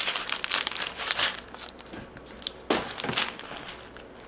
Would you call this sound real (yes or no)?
yes